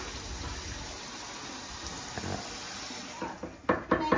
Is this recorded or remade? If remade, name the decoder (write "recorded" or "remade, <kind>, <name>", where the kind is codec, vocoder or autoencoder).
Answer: recorded